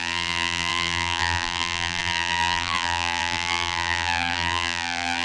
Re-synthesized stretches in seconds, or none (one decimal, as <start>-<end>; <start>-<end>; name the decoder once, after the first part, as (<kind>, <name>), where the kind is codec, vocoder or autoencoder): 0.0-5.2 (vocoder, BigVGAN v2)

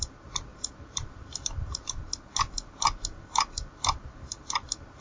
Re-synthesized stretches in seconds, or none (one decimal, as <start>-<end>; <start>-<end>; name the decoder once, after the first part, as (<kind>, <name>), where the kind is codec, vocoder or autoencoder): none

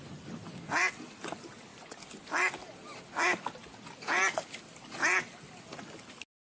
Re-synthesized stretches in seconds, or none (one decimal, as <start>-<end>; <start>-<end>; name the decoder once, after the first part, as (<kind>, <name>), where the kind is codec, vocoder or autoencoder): none

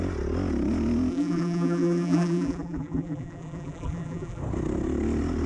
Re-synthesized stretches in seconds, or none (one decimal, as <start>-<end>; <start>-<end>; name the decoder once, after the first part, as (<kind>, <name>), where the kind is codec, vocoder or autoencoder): 1.1-4.4 (vocoder, BigVGAN v2)